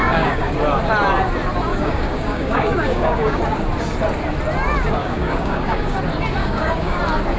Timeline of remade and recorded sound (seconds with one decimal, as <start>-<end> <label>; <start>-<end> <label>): 0.0-0.5 remade; 0.5-1.7 recorded; 1.7-3.4 remade; 3.4-5.0 recorded; 5.0-6.0 remade; 6.0-6.4 recorded; 6.4-7.0 remade; 7.0-7.4 recorded